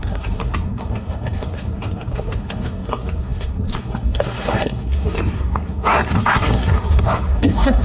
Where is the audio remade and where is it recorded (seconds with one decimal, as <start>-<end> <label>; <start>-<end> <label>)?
0.0-7.8 remade